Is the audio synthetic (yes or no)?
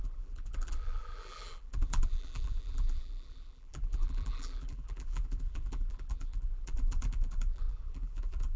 yes